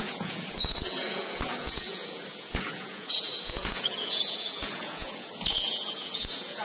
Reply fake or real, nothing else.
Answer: fake